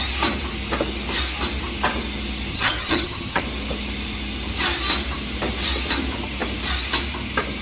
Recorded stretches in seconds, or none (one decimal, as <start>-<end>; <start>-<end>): 0.0-2.5; 3.4-7.6